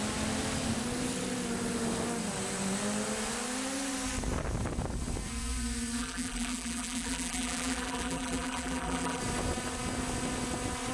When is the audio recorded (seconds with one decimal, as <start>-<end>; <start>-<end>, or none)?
0.0-6.0; 9.2-10.9